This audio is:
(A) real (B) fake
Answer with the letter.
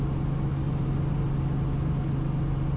A